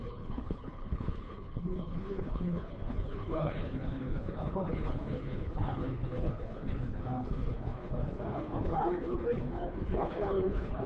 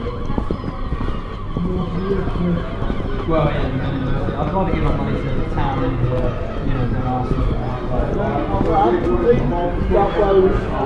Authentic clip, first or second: second